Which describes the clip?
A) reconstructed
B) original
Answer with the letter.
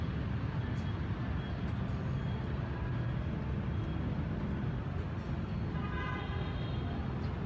B